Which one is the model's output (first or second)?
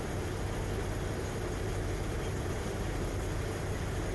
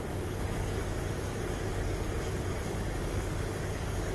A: second